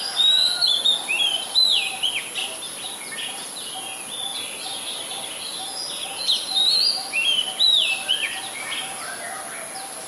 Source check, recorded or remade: recorded